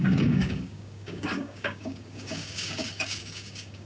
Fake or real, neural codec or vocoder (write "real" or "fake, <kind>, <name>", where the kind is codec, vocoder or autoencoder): fake, codec, DAC